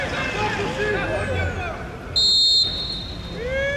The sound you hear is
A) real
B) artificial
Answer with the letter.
A